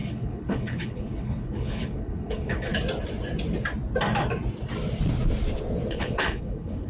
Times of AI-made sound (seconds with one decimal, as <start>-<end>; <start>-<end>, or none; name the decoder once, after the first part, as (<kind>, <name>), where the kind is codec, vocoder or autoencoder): 0.0-2.7 (codec, HILCodec); 5.9-6.9